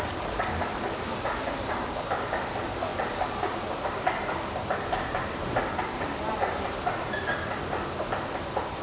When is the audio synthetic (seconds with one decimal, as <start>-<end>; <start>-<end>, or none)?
0.0-8.8